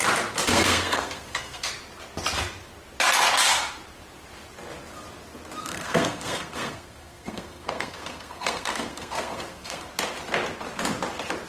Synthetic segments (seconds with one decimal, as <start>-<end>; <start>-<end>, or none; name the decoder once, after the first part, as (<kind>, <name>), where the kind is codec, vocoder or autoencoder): 0.5-1.7 (codec, SNAC); 5.6-9.9